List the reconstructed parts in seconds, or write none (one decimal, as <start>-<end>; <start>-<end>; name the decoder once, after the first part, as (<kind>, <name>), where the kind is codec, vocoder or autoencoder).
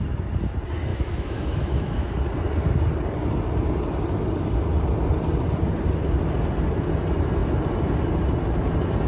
0.9-2.1 (autoencoder, DAC-VAE)